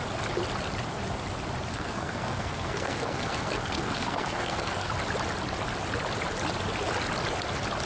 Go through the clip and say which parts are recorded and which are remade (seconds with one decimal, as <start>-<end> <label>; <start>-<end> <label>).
0.0-1.7 recorded; 1.7-4.9 remade; 4.9-7.9 recorded